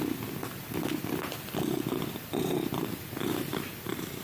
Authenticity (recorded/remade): recorded